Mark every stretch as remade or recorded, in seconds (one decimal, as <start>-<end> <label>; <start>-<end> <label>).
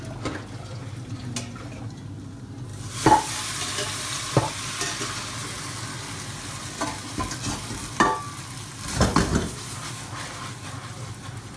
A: 0.0-11.6 recorded